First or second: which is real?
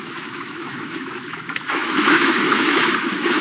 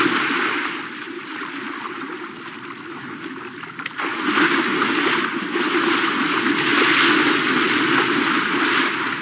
second